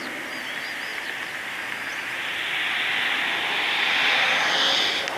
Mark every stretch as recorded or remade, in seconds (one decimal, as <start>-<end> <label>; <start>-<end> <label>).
0.0-5.2 recorded